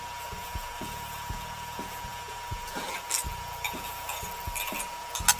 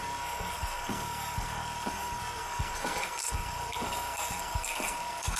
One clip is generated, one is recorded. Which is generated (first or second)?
second